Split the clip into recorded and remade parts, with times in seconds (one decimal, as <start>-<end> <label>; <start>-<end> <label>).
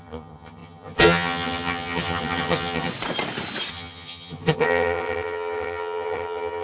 0.0-2.9 remade; 2.9-3.7 recorded; 3.7-6.6 remade